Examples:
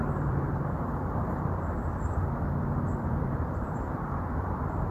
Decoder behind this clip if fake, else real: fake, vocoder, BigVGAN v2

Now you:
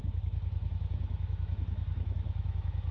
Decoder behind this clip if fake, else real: fake, autoencoder, DAC-VAE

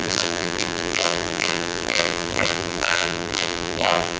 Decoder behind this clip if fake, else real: fake, vocoder, BigVGAN v2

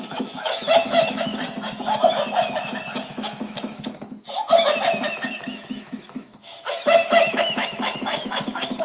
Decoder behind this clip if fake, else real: fake, autoencoder, DAC-VAE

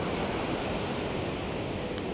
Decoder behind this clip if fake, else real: real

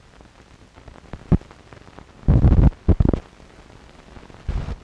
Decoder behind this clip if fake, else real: real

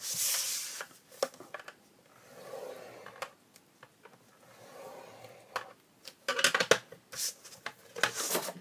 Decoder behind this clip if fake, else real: real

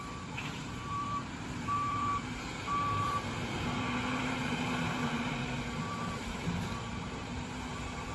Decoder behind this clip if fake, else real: fake, vocoder, BigVGAN v2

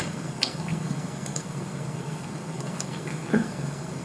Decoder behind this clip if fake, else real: fake, codec, SNAC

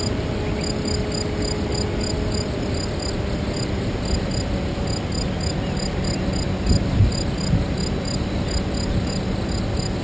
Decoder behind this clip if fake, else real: real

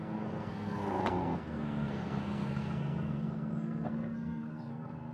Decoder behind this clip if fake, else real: fake, codec, SNAC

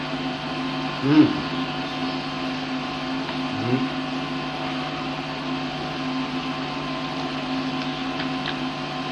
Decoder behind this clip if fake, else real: real